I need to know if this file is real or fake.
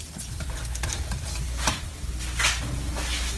real